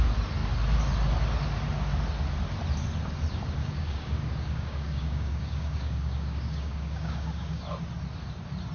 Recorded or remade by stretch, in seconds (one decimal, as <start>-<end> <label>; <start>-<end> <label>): 0.0-3.6 recorded; 3.6-7.6 remade; 7.6-8.7 recorded